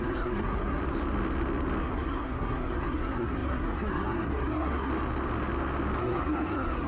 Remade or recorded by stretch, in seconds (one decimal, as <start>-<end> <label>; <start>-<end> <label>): 0.0-0.8 remade; 0.8-1.8 recorded; 1.8-4.9 remade; 4.9-6.0 recorded; 6.0-6.9 remade